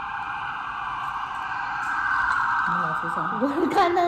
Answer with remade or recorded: recorded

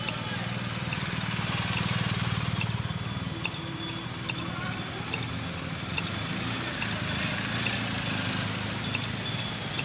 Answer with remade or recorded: recorded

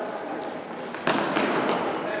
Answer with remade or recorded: recorded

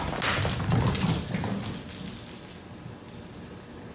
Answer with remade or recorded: recorded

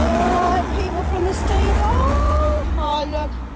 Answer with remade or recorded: remade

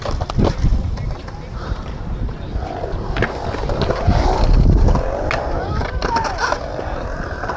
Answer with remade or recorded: recorded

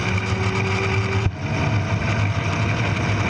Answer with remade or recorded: recorded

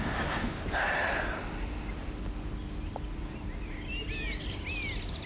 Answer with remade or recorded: recorded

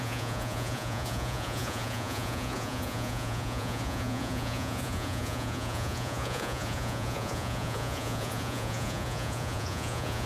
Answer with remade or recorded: remade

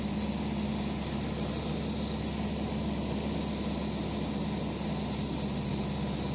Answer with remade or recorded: recorded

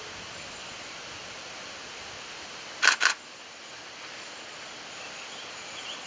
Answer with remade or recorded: recorded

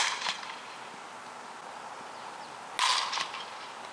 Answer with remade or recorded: recorded